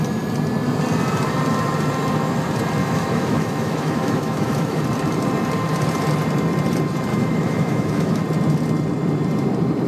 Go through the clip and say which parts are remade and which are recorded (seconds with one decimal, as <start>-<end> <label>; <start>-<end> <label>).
0.0-2.8 recorded; 2.8-4.8 remade; 4.8-7.1 recorded; 7.1-8.2 remade; 8.2-9.9 recorded